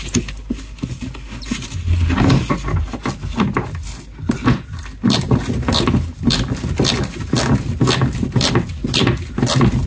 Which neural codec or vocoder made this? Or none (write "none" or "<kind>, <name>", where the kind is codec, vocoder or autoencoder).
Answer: none